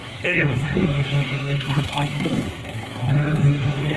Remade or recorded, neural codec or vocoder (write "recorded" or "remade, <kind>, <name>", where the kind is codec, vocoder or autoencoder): remade, codec, SNAC